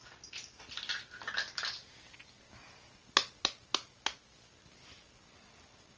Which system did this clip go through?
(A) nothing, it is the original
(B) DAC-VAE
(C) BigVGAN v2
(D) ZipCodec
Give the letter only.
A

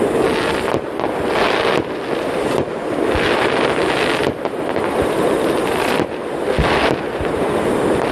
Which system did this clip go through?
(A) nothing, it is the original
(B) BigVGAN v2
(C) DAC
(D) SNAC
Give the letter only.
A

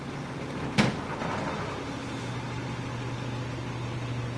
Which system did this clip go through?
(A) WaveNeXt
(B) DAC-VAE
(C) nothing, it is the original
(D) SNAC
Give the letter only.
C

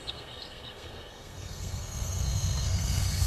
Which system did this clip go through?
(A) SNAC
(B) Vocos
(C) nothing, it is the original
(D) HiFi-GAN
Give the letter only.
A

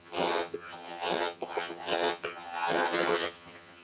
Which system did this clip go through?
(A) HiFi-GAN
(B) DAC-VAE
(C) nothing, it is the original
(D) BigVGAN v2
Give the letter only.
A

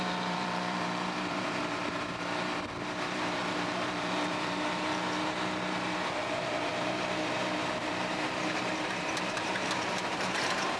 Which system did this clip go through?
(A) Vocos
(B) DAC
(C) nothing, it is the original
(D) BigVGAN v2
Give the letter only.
D